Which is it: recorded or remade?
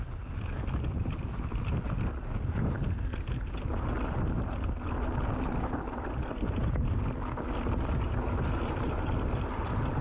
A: recorded